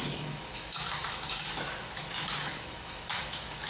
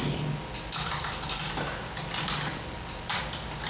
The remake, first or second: first